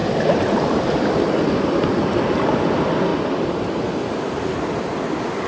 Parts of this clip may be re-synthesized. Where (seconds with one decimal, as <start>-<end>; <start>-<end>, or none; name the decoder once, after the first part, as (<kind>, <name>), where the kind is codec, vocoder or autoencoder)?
0.0-1.2 (vocoder, BigVGAN v2)